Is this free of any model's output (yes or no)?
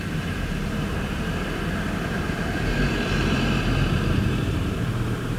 no